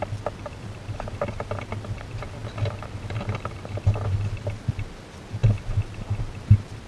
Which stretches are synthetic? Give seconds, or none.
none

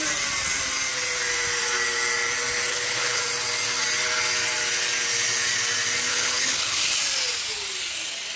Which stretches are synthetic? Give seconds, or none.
2.7-3.2 (codec, HILCodec); 6.1-7.0

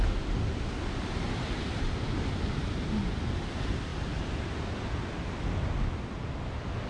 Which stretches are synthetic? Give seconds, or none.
none

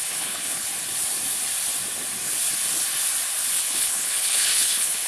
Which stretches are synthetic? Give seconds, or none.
0.0-0.7 (codec, HILCodec); 3.6-5.1

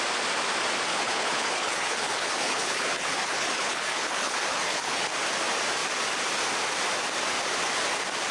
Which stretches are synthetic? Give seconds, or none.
0.9-5.1 (codec, HILCodec)